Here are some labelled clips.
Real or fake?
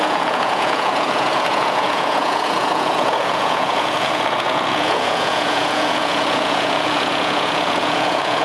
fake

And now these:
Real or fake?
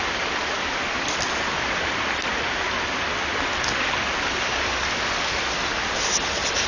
real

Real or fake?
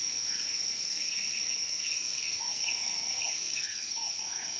fake